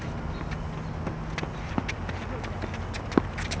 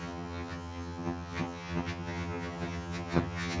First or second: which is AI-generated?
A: second